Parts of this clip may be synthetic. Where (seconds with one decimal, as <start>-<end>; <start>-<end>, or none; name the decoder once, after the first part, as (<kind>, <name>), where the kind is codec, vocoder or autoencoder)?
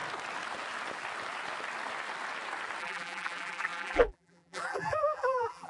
2.8-5.7 (vocoder, BigVGAN v2)